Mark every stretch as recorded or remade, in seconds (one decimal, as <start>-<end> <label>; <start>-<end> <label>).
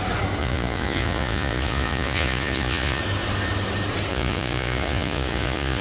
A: 0.0-0.4 recorded; 0.4-3.0 remade; 3.0-4.1 recorded; 4.1-5.8 remade